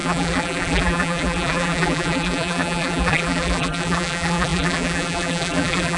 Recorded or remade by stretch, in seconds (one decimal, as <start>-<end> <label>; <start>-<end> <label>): 0.0-6.0 remade